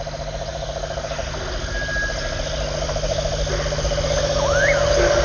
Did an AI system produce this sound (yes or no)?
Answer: no